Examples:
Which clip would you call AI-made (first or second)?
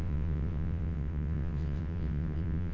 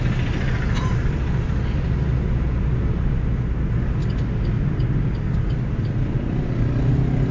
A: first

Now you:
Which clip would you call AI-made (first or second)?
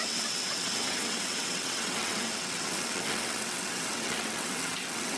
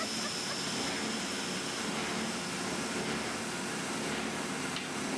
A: first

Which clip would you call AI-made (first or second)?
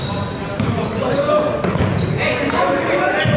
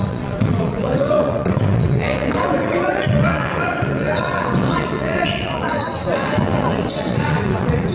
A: second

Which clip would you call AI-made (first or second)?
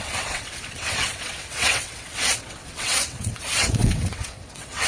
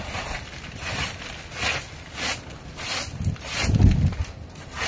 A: first